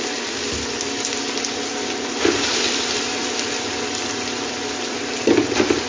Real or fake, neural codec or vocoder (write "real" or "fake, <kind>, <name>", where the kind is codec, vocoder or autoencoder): real